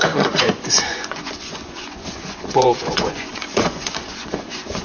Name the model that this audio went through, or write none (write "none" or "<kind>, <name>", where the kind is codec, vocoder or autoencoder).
vocoder, Vocos